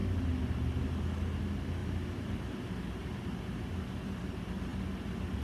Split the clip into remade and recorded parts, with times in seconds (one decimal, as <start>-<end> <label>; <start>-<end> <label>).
0.0-1.8 recorded; 1.8-3.2 remade; 3.2-5.4 recorded

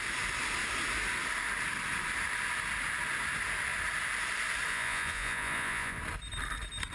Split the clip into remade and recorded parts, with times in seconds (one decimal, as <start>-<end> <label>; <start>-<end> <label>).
0.0-4.7 recorded; 4.7-6.0 remade; 6.0-6.9 recorded

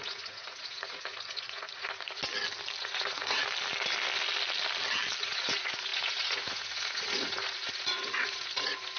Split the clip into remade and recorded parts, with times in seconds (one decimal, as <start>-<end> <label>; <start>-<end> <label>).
0.0-2.2 remade; 2.2-2.8 recorded; 2.8-3.4 remade; 3.4-5.2 recorded; 5.2-9.0 remade

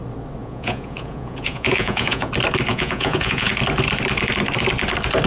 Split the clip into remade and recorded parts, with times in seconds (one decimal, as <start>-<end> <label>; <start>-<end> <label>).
0.0-0.4 recorded; 0.4-2.3 remade; 2.3-2.7 recorded; 2.7-3.5 remade; 3.5-5.3 recorded

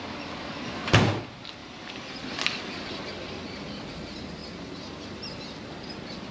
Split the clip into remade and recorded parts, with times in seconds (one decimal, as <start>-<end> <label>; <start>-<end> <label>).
0.0-6.3 recorded